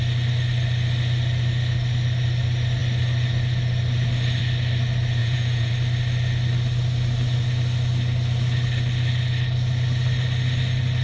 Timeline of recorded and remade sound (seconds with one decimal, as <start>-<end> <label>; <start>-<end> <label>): 0.0-5.2 recorded; 5.2-5.7 remade; 5.7-11.0 recorded